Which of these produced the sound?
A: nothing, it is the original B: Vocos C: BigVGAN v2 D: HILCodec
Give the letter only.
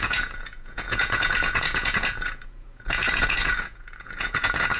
B